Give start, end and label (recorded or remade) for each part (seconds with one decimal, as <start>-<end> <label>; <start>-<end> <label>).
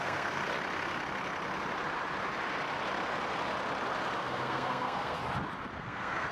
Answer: 0.0-0.4 remade; 0.4-4.2 recorded; 4.2-5.2 remade; 5.2-5.8 recorded; 5.8-6.3 remade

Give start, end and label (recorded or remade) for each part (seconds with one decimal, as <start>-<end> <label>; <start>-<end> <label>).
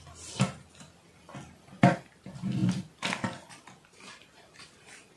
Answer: 0.0-5.2 recorded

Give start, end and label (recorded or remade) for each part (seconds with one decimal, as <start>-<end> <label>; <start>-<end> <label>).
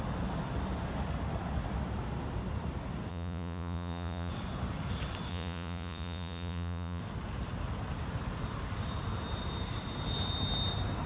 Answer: 0.0-3.1 recorded; 3.1-4.3 remade; 4.3-5.3 recorded; 5.3-7.0 remade; 7.0-11.1 recorded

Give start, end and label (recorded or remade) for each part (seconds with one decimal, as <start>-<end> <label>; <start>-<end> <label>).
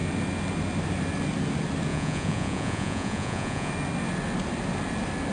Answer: 0.0-1.9 recorded; 1.9-3.7 remade; 3.7-5.3 recorded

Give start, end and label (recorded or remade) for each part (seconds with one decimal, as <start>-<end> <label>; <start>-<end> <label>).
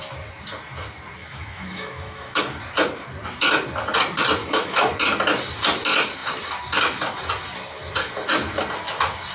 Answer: 0.0-1.2 recorded; 1.2-2.4 remade; 2.4-4.4 recorded; 4.4-4.9 remade; 4.9-9.3 recorded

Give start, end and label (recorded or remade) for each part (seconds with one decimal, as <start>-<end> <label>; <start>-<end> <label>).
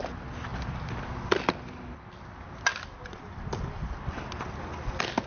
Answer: 0.0-5.3 recorded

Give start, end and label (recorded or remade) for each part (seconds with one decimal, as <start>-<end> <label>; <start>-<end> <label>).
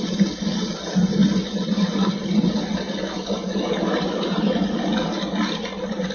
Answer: 0.0-6.1 recorded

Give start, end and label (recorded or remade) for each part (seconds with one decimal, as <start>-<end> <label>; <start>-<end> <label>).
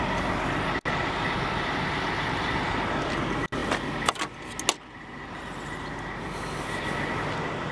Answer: 0.0-7.7 recorded